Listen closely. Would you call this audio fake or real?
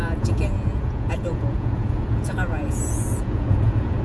fake